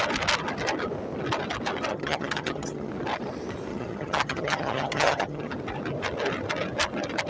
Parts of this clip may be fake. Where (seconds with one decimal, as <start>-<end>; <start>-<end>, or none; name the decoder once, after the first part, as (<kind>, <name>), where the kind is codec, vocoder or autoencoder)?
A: 1.9-2.9 (vocoder, HiFi-GAN); 3.7-5.5